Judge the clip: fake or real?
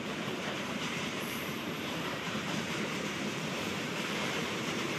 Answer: fake